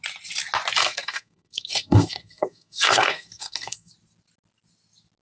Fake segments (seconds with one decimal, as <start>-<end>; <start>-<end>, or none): 0.8-3.9